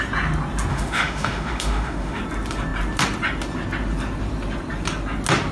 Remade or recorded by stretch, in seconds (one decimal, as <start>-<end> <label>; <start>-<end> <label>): 0.0-0.7 recorded; 0.7-2.2 remade; 2.2-5.5 recorded